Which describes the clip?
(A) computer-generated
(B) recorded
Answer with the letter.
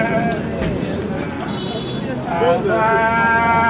B